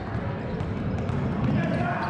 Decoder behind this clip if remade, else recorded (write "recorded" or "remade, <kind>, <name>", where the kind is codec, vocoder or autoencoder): recorded